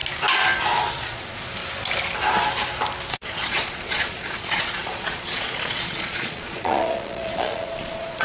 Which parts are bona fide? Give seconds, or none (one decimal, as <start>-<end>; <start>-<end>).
0.0-0.9; 1.6-3.1